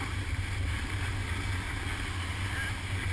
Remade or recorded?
recorded